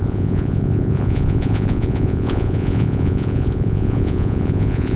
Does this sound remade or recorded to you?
remade